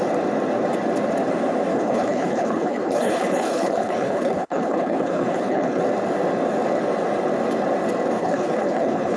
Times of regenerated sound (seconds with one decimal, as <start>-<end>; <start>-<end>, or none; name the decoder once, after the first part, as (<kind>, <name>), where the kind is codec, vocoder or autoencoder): 1.7-5.8 (codec, HILCodec); 8.2-9.2